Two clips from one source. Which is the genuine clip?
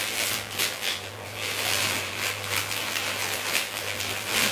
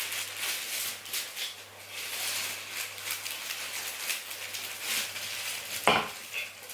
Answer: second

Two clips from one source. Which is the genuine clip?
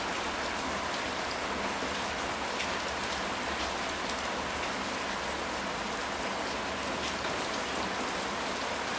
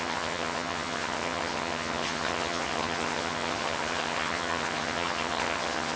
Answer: first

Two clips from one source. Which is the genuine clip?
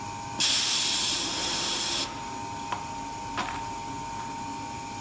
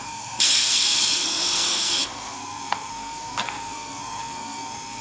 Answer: first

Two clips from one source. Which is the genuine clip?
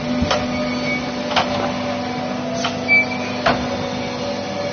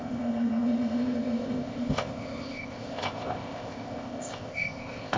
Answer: first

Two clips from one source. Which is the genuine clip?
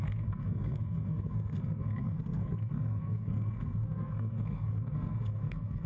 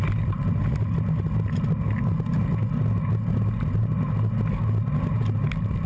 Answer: second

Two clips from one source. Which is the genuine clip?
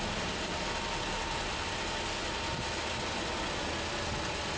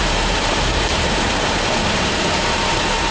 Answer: first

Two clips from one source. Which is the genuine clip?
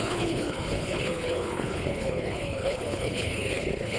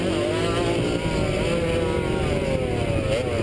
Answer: second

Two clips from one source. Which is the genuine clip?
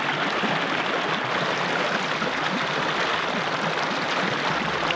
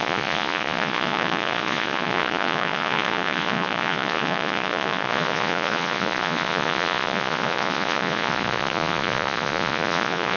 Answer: first